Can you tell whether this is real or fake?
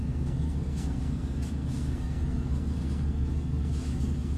fake